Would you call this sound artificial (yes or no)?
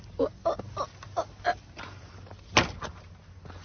no